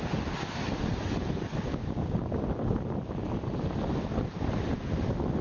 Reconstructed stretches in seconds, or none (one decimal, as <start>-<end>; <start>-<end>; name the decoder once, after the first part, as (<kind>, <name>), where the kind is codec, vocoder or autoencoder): 1.7-2.5 (codec, DAC)